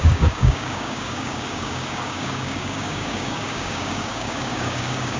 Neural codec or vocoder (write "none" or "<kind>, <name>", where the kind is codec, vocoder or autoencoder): codec, DAC